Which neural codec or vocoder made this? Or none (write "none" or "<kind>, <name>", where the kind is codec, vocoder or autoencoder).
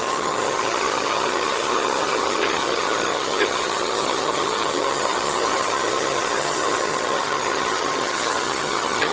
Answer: vocoder, HiFi-GAN